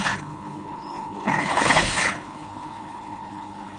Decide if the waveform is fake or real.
fake